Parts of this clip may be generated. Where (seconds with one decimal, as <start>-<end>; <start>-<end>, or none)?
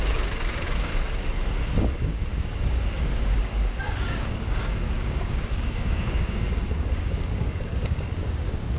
0.0-0.9; 1.9-8.8